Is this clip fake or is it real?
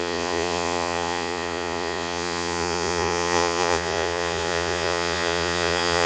fake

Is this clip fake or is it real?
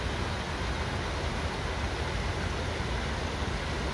real